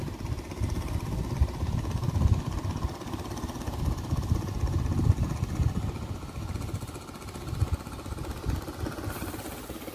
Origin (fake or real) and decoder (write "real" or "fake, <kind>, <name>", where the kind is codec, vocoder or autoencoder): real